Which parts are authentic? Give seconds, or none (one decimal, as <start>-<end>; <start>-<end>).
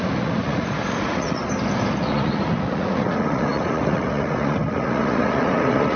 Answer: 1.4-2.0